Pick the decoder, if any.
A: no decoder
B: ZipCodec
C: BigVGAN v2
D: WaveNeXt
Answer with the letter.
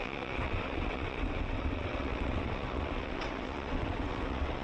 D